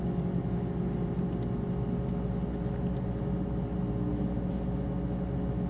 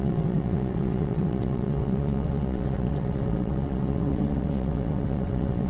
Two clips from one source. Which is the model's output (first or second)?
second